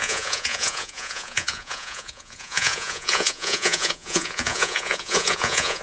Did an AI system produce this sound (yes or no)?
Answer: yes